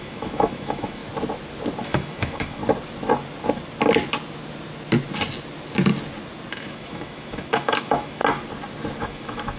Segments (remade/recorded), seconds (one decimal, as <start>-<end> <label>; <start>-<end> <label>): 0.0-1.0 remade; 1.0-1.8 recorded; 1.8-2.6 remade; 2.6-6.5 recorded; 6.5-8.2 remade; 8.2-9.0 recorded; 9.0-9.6 remade